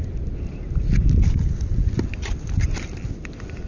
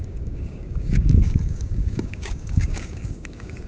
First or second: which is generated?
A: second